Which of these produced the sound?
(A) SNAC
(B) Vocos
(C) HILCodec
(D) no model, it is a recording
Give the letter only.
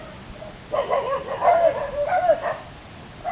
D